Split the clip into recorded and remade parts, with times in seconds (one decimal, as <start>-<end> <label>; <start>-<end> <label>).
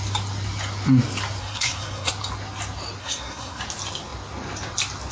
0.0-1.4 recorded; 1.4-2.1 remade; 2.1-3.0 recorded; 3.0-3.6 remade; 3.6-5.1 recorded